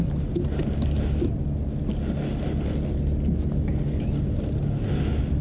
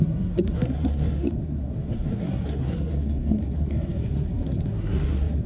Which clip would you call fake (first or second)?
second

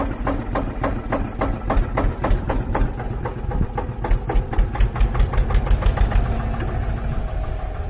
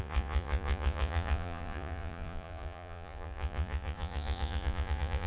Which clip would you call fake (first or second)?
second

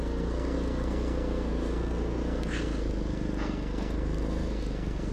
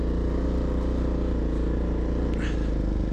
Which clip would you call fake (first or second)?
first